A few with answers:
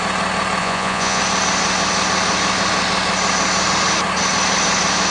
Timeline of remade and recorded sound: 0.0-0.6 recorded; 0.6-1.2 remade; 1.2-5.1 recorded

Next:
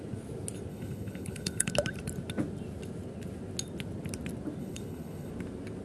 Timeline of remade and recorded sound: 0.0-0.7 recorded; 0.7-1.7 remade; 1.7-4.6 recorded; 4.6-5.3 remade; 5.3-5.8 recorded

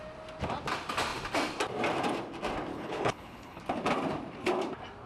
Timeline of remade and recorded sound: 0.0-2.7 recorded; 2.7-3.6 remade; 3.6-5.1 recorded